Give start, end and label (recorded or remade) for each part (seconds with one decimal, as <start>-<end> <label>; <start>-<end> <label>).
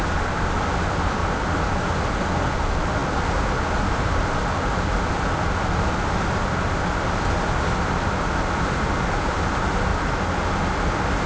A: 0.0-11.3 recorded